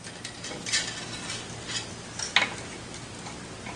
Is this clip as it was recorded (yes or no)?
yes